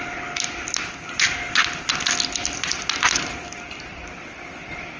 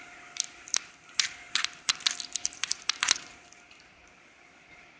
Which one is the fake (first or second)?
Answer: second